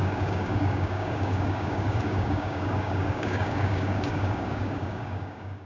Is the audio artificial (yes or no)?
yes